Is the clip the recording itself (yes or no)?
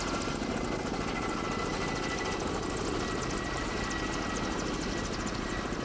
yes